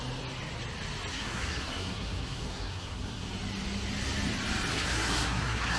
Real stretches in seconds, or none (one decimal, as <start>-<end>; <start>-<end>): 0.0-1.1; 3.3-4.7